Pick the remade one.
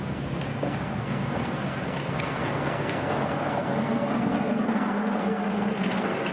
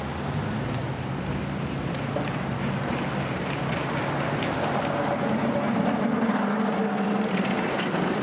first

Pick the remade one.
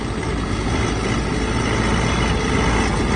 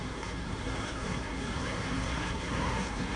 second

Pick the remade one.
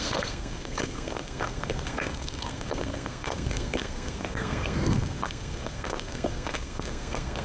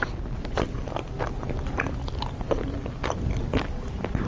first